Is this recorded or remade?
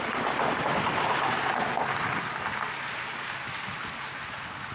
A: recorded